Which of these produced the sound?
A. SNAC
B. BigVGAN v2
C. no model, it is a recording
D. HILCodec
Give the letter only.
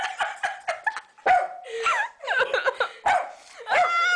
C